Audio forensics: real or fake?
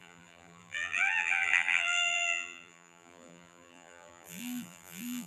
fake